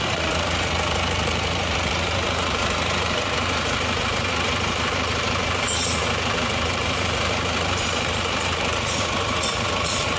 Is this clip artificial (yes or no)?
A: yes